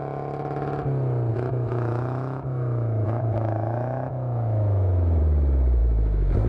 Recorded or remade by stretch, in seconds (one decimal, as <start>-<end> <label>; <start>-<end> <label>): 0.0-1.3 recorded; 1.3-5.2 remade; 5.2-5.8 recorded; 5.8-6.5 remade

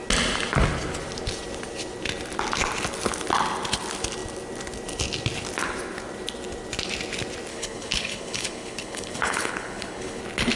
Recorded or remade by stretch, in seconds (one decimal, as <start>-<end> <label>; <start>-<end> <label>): 0.0-7.5 recorded; 7.5-10.2 remade; 10.2-10.6 recorded

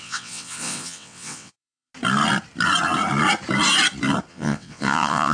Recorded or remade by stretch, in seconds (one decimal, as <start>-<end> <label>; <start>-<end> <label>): 0.0-1.9 remade; 1.9-4.3 recorded; 4.3-5.3 remade

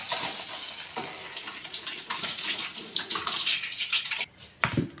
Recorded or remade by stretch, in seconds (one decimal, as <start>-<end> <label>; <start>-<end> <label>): 0.0-1.2 recorded; 1.2-4.2 remade; 4.2-5.0 recorded